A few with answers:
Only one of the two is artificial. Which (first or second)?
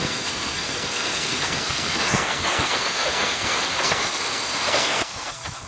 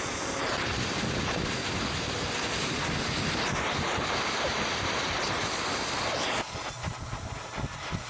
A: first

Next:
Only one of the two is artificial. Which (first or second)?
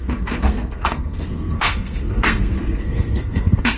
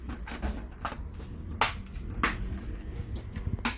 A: first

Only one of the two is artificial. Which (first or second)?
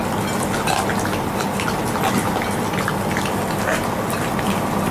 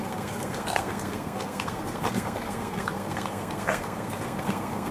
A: second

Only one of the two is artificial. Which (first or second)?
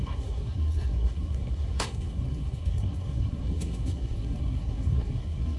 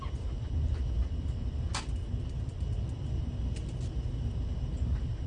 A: first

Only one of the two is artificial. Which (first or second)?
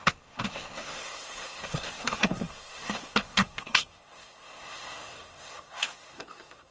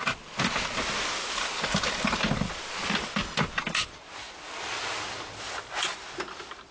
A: first